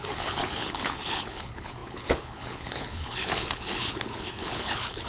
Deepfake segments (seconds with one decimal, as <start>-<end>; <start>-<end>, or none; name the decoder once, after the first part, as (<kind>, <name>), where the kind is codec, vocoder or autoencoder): 0.0-5.1 (codec, HILCodec)